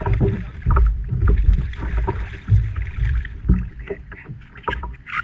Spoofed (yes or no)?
yes